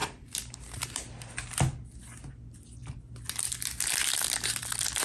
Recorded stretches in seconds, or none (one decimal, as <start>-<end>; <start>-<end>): 1.3-5.0